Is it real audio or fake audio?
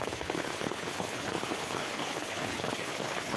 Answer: fake